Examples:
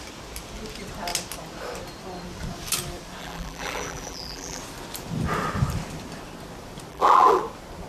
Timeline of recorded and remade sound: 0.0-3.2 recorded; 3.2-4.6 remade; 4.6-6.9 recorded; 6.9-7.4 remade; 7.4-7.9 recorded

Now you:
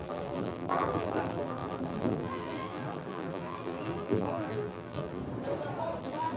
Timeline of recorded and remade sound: 0.0-5.2 remade; 5.2-6.0 recorded; 6.0-6.4 remade

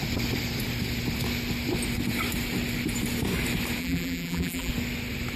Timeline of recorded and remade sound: 0.0-3.8 recorded; 3.8-4.7 remade; 4.7-5.4 recorded

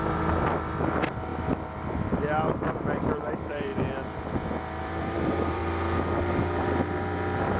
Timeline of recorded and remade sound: 0.0-1.3 remade; 1.3-3.0 recorded; 3.0-3.7 remade; 3.7-4.8 recorded; 4.8-5.6 remade; 5.6-6.6 recorded; 6.6-7.6 remade

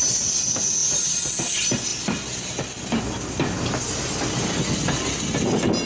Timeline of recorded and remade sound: 0.0-5.9 recorded

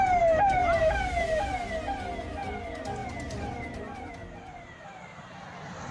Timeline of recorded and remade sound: 0.0-0.6 recorded; 0.6-1.7 remade; 1.7-3.0 recorded; 3.0-4.1 remade; 4.1-5.9 recorded

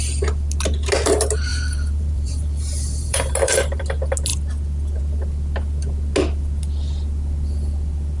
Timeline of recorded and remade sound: 0.0-1.5 recorded; 1.5-3.8 remade; 3.8-8.2 recorded